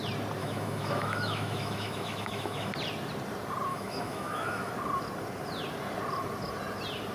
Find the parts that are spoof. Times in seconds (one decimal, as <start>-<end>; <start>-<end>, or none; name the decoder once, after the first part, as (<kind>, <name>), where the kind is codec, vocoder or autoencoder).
0.4-2.7 (autoencoder, DAC-VAE); 3.7-4.7